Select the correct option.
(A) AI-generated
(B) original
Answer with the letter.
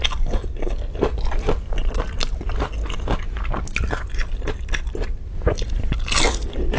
B